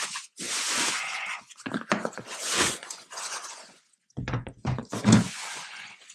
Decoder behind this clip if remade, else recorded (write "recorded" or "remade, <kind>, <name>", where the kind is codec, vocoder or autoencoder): remade, vocoder, Vocos